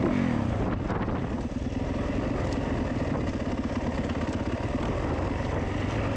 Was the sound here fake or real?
real